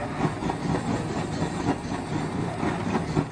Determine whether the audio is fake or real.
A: real